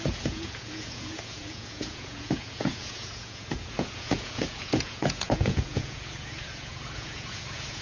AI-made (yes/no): yes